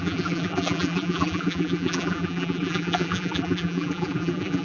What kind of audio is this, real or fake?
fake